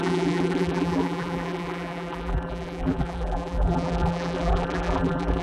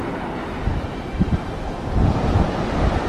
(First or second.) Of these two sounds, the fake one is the first